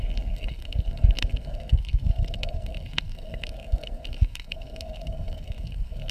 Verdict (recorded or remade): remade